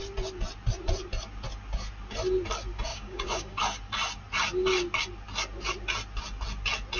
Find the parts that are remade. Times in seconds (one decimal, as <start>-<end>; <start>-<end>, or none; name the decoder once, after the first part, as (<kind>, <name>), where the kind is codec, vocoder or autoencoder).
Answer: 2.9-3.6 (codec, DAC)